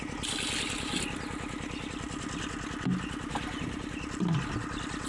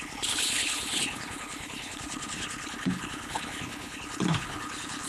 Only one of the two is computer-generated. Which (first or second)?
second